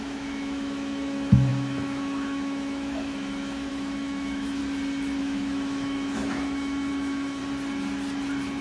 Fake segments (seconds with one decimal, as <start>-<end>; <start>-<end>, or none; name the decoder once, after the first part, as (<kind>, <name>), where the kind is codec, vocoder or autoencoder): 0.0-4.6 (autoencoder, DAC-VAE); 5.2-7.4